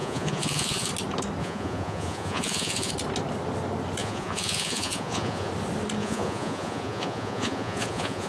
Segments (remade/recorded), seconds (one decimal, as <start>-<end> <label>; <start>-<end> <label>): 0.0-0.9 remade; 0.9-1.4 recorded; 1.4-2.9 remade; 2.9-4.0 recorded; 4.0-5.5 remade; 5.5-6.0 recorded; 6.0-8.3 remade